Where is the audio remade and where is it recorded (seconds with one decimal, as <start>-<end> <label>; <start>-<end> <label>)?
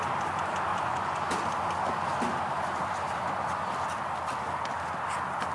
0.0-0.7 recorded; 0.7-1.3 remade; 1.3-5.5 recorded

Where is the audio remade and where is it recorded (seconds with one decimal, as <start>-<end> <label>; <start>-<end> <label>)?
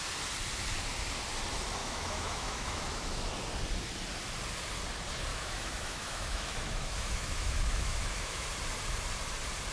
0.0-1.8 recorded; 1.8-3.3 remade; 3.3-5.3 recorded; 5.3-8.5 remade; 8.5-9.7 recorded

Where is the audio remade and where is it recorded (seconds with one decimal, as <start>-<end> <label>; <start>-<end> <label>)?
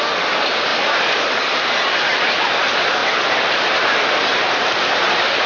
0.0-0.7 recorded; 0.7-1.3 remade; 1.3-3.0 recorded; 3.0-4.7 remade; 4.7-5.5 recorded